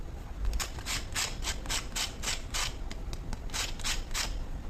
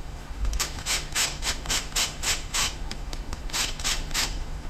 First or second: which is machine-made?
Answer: second